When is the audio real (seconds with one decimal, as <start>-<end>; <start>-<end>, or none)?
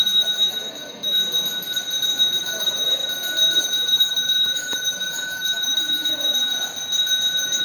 1.2-2.4; 3.0-3.6; 6.5-7.6